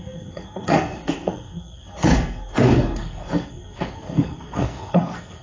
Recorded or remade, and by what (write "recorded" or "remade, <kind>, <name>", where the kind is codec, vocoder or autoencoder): remade, codec, SNAC